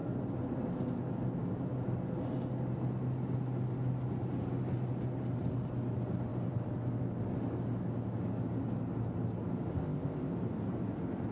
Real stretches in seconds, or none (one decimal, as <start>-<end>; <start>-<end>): 0.0-9.7; 10.3-11.3